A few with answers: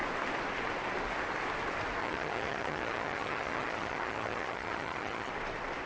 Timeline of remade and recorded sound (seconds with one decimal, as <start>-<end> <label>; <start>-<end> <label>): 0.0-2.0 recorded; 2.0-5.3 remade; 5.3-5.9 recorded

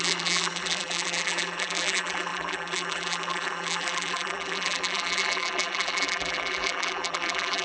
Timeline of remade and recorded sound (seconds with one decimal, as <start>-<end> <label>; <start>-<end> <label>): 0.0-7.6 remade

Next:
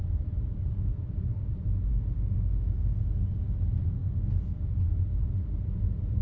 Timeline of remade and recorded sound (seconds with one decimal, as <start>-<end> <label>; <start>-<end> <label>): 0.0-1.9 recorded; 1.9-3.0 remade; 3.0-6.2 recorded

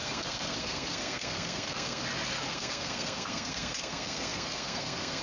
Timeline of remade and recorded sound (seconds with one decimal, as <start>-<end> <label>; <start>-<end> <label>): 0.0-2.0 remade; 2.0-2.5 recorded; 2.5-5.2 remade